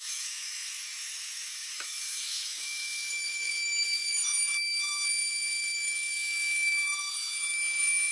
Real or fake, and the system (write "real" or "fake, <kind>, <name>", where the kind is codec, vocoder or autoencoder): fake, autoencoder, DAC-VAE